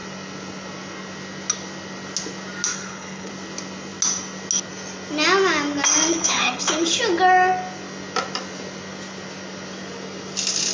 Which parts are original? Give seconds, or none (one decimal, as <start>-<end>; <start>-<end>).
0.0-2.7; 3.3-6.1; 7.0-10.7